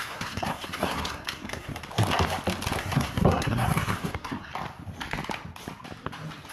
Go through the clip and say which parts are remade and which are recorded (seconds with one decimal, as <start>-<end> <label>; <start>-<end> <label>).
0.0-1.7 remade; 1.7-2.8 recorded; 2.8-4.5 remade; 4.5-6.5 recorded